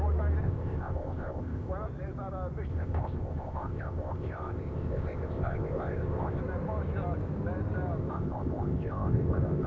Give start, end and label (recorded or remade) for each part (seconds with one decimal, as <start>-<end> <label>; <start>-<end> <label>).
0.0-0.4 recorded; 0.4-1.7 remade; 1.7-2.7 recorded; 2.7-6.4 remade; 6.4-8.0 recorded; 8.0-9.7 remade